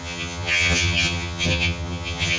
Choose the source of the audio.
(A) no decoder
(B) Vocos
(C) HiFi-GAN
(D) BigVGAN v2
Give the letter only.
C